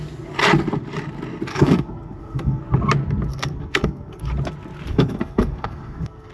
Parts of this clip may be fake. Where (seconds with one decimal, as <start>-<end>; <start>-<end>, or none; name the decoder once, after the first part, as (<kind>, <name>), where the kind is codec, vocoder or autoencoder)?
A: 1.5-2.6 (codec, SNAC); 3.3-4.2; 4.9-6.3